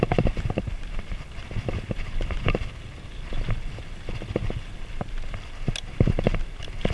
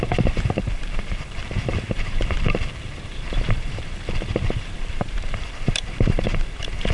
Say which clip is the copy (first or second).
second